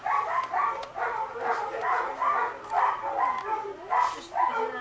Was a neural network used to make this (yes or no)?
no